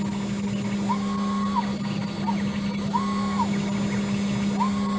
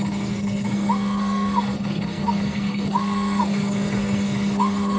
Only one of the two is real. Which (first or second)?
first